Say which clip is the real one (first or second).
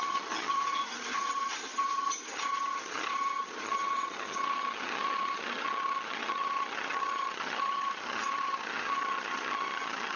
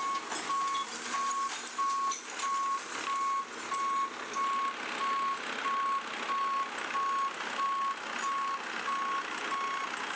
second